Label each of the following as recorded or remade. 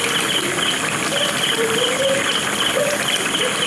remade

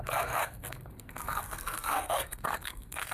remade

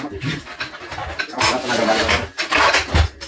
recorded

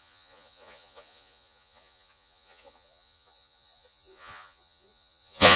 remade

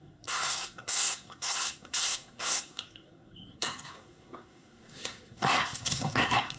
remade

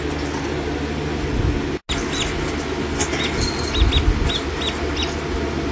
recorded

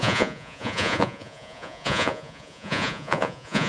remade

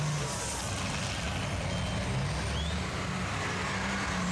recorded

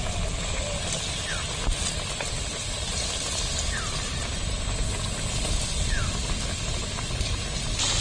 recorded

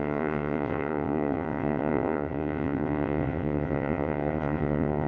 remade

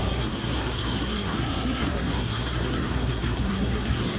remade